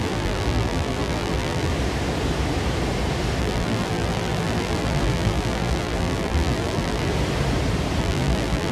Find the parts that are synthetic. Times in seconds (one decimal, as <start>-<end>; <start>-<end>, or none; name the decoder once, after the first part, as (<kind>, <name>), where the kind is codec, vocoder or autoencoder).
0.0-1.7 (vocoder, BigVGAN v2); 3.4-7.1; 8.0-8.7